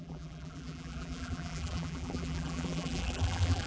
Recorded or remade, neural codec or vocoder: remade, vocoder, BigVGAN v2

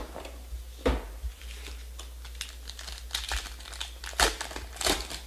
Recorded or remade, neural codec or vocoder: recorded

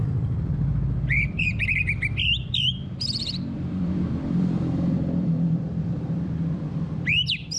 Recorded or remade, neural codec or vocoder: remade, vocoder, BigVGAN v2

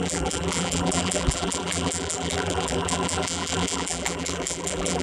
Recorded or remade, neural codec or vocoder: remade, vocoder, BigVGAN v2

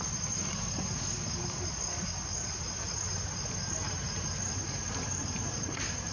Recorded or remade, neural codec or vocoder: remade, vocoder, BigVGAN v2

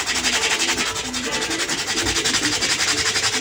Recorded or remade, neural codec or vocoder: remade, vocoder, BigVGAN v2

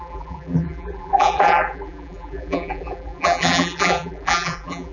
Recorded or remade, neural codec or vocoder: remade, vocoder, BigVGAN v2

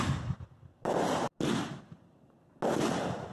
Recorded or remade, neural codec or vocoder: recorded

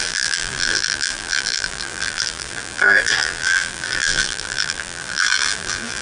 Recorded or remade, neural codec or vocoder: remade, vocoder, BigVGAN v2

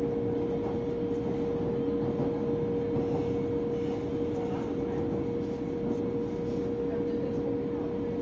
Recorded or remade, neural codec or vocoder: recorded